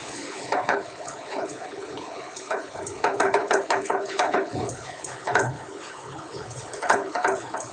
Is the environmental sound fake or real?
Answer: fake